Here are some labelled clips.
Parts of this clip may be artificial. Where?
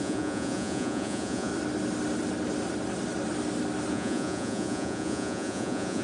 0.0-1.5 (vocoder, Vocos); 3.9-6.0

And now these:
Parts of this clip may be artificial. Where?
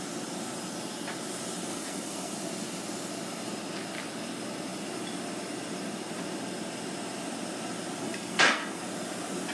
1.7-2.3 (codec, SNAC); 8.0-8.8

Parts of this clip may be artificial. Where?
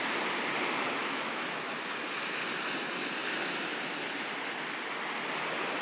1.0-1.7 (autoencoder, DAC-VAE)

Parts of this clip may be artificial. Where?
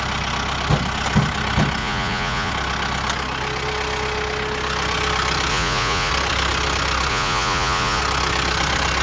1.8-2.5 (vocoder, Vocos); 5.5-6.1; 7.1-8.0